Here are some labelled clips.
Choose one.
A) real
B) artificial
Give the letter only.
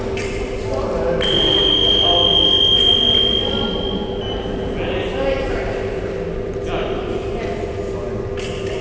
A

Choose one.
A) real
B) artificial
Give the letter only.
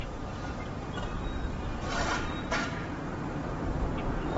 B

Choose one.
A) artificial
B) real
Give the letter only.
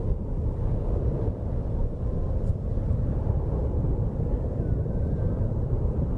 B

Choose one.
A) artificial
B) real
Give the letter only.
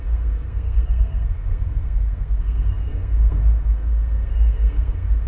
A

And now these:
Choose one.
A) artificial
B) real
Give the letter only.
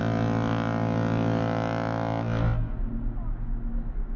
B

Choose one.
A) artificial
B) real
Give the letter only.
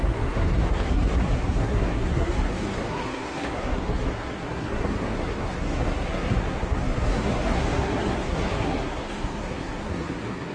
A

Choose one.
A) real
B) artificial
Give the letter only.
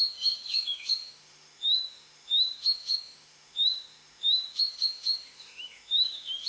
B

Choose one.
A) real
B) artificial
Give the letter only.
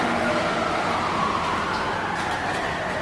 A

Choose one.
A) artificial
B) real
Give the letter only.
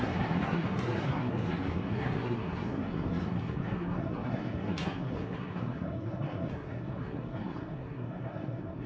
A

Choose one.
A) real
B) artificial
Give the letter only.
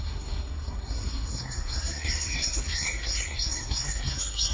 B